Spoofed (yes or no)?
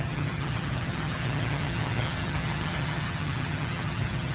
yes